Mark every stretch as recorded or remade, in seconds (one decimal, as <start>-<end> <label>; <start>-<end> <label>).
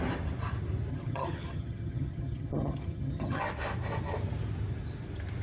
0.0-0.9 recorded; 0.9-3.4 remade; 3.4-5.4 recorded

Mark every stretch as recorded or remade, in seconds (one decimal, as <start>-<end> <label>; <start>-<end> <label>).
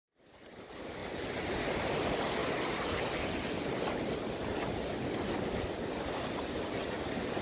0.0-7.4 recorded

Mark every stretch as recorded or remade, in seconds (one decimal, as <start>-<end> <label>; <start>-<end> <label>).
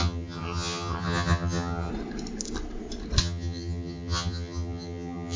0.0-1.9 remade; 1.9-3.2 recorded; 3.2-5.4 remade